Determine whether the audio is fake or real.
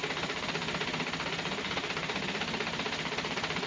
real